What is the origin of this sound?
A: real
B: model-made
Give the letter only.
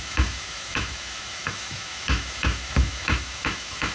B